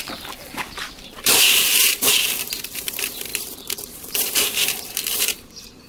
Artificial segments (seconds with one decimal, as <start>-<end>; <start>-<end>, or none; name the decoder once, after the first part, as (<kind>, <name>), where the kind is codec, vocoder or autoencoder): 0.0-5.9 (vocoder, BigVGAN v2)